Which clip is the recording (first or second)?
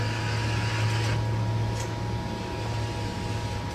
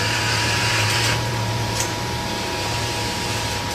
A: first